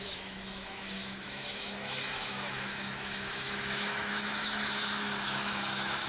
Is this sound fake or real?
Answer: fake